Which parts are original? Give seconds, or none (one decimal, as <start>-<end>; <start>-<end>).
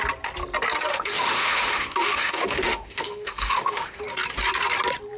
0.0-0.9; 4.0-5.2